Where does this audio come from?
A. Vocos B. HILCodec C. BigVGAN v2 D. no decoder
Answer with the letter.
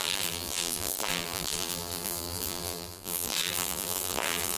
C